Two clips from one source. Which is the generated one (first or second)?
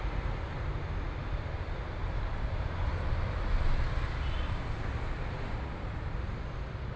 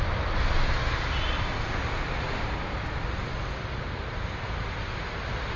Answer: first